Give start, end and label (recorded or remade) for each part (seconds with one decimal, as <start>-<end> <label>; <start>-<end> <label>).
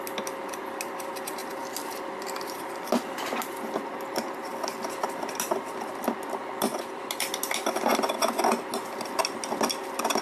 0.0-10.2 recorded